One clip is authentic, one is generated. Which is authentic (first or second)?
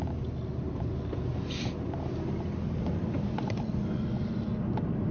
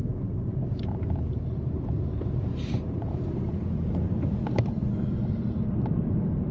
first